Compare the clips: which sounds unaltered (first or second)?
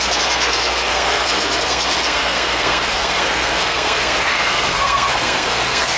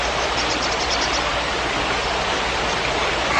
second